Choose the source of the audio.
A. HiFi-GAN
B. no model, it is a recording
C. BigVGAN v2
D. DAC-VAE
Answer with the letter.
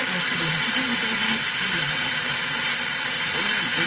B